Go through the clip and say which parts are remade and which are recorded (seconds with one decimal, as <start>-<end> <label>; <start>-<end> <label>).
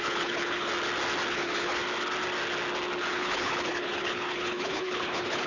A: 0.0-0.7 remade; 0.7-1.3 recorded; 1.3-1.8 remade; 1.8-3.1 recorded; 3.1-5.5 remade